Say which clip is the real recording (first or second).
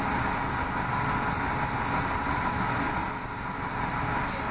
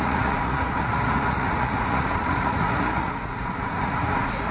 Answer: first